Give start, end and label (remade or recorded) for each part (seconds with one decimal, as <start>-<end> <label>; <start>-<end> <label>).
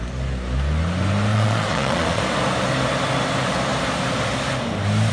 0.0-1.3 recorded; 1.3-2.2 remade; 2.2-5.1 recorded